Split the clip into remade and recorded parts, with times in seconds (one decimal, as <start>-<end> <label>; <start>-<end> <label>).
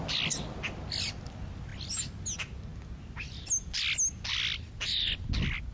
0.0-5.7 recorded